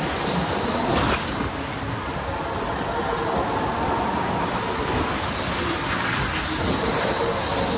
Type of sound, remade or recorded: recorded